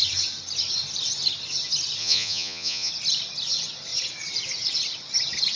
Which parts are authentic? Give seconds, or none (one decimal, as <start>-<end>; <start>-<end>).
0.0-2.0; 2.9-5.5